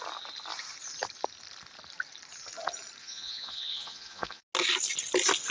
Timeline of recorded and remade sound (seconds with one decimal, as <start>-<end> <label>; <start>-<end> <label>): 0.0-3.0 recorded; 3.0-4.4 remade; 4.4-5.5 recorded